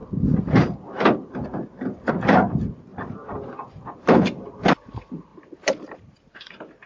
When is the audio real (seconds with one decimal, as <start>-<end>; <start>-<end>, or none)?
0.0-2.1